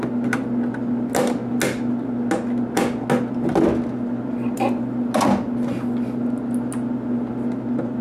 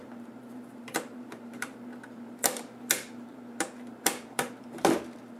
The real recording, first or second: first